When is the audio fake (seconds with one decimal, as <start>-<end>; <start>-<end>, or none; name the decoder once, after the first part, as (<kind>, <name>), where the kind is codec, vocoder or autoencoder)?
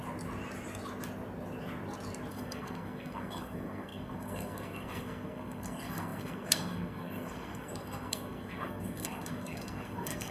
2.3-10.3 (codec, SNAC)